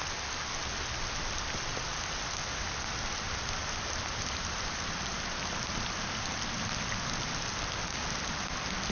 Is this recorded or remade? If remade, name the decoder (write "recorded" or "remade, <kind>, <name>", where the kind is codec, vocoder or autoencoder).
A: recorded